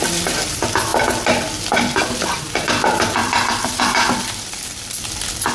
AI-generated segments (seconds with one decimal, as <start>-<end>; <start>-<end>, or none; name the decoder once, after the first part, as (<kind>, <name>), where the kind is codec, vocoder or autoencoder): 3.2-3.8 (vocoder, BigVGAN v2)